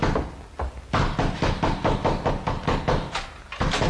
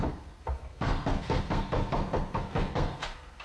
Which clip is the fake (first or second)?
second